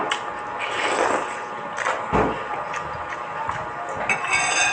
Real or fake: real